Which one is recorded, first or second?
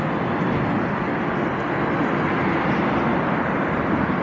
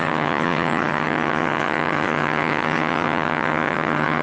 first